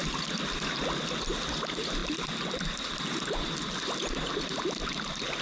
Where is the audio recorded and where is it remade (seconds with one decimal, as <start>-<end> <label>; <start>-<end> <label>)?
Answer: 0.0-5.4 recorded